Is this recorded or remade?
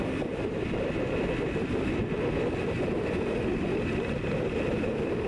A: recorded